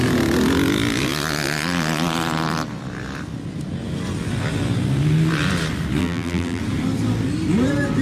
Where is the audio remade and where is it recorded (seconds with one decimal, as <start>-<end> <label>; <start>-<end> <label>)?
0.0-6.0 recorded; 6.0-6.6 remade; 6.6-8.0 recorded